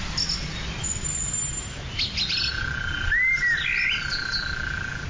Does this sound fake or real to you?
real